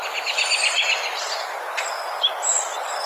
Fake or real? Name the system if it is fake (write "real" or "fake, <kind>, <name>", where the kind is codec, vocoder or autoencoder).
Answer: real